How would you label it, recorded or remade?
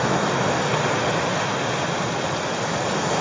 recorded